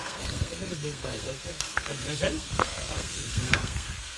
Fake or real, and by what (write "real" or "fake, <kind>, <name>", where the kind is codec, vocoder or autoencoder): fake, codec, SNAC